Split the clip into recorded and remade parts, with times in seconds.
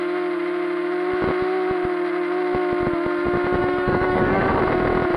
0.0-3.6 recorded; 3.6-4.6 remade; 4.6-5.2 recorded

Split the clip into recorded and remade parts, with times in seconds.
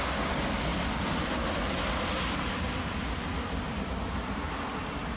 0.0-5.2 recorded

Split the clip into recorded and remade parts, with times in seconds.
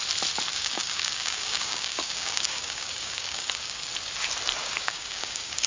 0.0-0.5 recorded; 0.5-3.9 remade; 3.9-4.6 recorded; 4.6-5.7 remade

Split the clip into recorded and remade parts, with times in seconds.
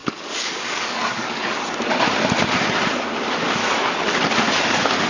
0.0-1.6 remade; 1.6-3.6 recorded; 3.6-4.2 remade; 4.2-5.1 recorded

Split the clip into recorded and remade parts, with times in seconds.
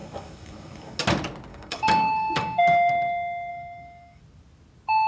0.0-1.0 remade; 1.0-1.5 recorded; 1.5-2.9 remade; 2.9-3.5 recorded; 3.5-4.2 remade; 4.2-5.1 recorded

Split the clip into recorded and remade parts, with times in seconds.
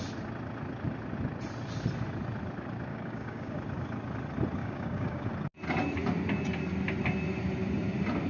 0.0-2.9 recorded; 2.9-3.5 remade; 3.5-4.6 recorded; 4.6-5.3 remade; 5.3-8.3 recorded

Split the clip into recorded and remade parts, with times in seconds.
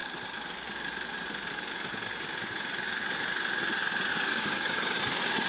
0.0-4.1 recorded; 4.1-5.0 remade; 5.0-5.5 recorded